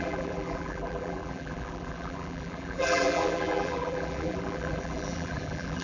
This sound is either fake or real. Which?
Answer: fake